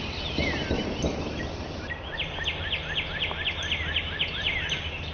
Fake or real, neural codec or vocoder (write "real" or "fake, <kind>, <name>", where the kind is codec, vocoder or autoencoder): real